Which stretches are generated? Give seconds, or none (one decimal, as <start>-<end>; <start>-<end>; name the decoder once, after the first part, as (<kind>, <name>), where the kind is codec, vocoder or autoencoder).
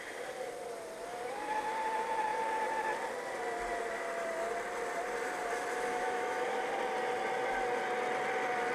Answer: 5.9-6.6 (autoencoder, DAC-VAE)